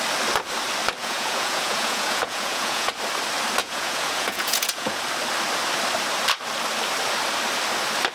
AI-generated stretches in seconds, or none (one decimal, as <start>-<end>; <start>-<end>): 1.0-2.9; 3.6-5.0